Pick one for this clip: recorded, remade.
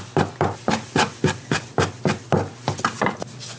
recorded